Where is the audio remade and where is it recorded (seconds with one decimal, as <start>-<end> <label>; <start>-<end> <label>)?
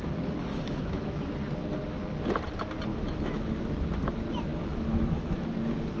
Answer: 0.0-0.4 recorded; 0.4-1.3 remade; 1.3-2.9 recorded; 2.9-3.6 remade; 3.6-4.5 recorded; 4.5-5.5 remade; 5.5-6.0 recorded